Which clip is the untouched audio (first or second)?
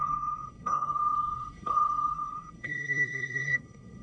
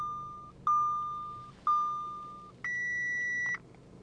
second